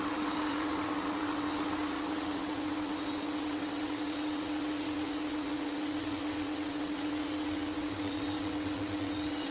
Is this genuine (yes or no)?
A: no